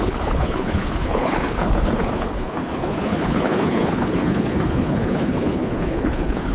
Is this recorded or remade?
remade